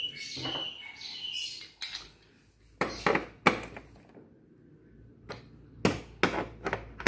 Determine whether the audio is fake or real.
real